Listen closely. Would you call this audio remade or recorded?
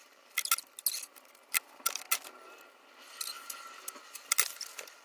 recorded